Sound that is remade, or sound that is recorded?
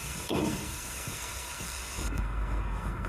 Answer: remade